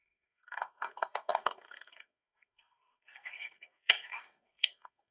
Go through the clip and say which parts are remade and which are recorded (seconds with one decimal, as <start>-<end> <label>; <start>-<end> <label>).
0.0-5.1 remade